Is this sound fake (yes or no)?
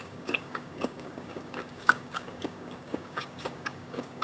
yes